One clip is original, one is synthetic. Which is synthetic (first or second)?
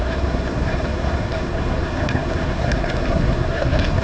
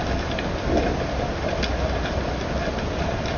first